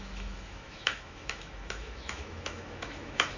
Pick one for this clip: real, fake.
fake